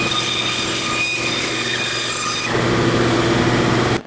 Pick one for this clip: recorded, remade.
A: recorded